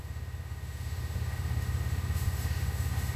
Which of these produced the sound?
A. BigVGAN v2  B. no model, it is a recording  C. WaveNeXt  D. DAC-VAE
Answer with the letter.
D